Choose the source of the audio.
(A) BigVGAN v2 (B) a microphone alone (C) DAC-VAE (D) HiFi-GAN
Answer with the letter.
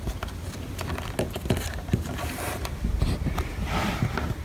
B